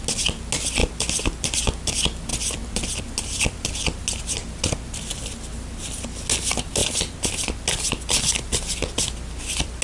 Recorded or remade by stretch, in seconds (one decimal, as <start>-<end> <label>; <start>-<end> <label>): 0.0-9.8 recorded